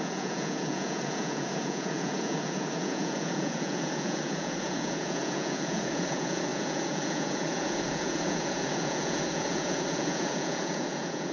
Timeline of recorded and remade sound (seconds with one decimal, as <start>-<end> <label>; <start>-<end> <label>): 0.0-11.3 remade